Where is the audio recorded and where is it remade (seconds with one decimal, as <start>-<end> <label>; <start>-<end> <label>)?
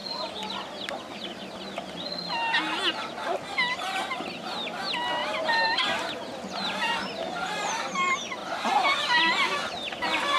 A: 0.0-10.4 recorded